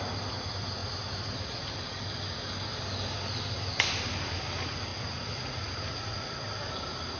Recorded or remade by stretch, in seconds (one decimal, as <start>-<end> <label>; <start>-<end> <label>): 0.0-4.9 recorded; 4.9-6.4 remade; 6.4-7.2 recorded